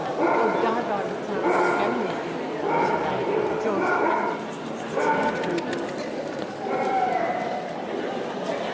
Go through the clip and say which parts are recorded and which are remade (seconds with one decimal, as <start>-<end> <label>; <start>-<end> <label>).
0.0-8.7 recorded